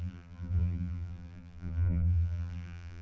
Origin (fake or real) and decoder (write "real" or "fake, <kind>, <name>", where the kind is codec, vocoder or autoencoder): fake, vocoder, BigVGAN v2